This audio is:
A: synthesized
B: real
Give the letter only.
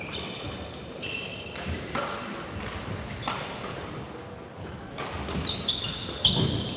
B